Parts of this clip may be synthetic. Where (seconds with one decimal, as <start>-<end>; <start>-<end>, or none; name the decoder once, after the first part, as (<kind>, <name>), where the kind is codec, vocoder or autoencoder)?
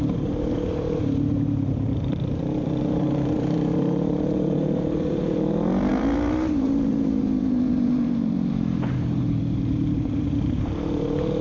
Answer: 0.0-11.4 (vocoder, BigVGAN v2)